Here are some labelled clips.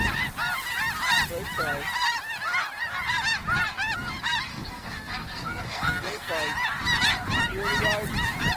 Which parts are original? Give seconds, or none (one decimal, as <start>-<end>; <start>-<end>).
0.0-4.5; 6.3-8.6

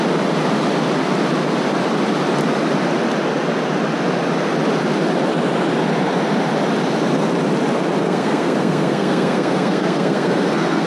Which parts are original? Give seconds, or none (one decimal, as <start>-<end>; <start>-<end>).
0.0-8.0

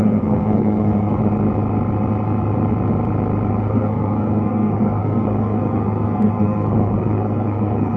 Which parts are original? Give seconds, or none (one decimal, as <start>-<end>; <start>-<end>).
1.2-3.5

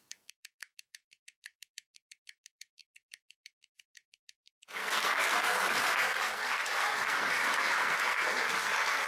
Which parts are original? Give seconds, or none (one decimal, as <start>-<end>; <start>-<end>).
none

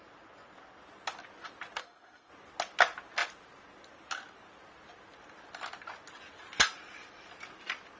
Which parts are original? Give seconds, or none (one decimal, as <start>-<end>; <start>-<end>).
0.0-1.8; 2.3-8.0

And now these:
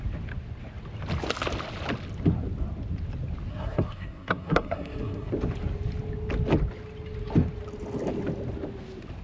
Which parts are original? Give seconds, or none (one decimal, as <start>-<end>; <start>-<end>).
0.0-3.5; 5.3-9.2